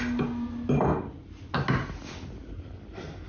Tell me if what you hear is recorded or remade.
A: recorded